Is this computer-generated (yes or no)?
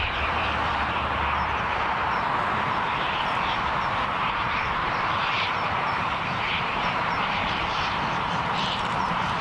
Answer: yes